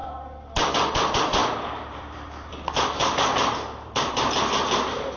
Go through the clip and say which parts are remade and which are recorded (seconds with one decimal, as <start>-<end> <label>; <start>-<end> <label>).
0.0-1.4 recorded; 1.4-4.5 remade; 4.5-5.2 recorded